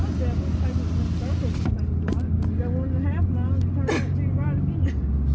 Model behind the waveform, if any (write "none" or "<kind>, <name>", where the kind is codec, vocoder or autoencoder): none